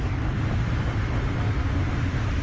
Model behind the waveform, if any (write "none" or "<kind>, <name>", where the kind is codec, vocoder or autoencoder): none